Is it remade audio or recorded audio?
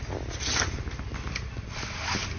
recorded